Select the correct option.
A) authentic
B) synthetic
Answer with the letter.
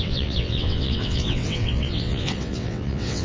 B